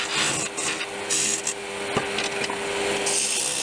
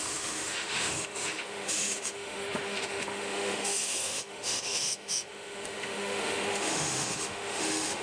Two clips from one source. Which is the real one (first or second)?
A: first